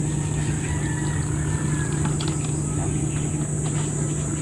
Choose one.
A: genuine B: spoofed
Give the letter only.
A